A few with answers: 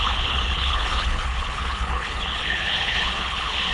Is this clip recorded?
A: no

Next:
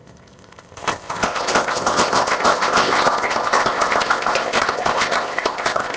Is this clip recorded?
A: no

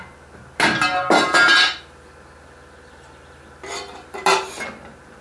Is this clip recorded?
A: yes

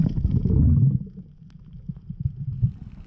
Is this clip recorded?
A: yes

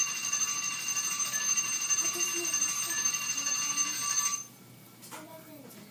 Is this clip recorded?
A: no